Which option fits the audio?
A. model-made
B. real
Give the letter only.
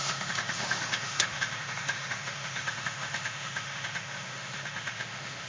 A